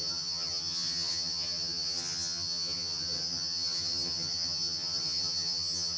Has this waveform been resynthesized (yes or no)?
yes